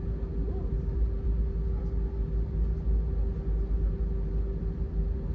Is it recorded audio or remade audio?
recorded